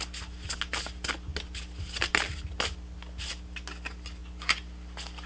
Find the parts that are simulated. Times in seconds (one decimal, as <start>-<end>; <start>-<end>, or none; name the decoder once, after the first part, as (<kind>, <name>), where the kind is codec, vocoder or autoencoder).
none